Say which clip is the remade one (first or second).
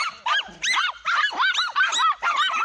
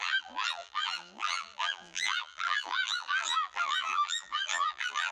second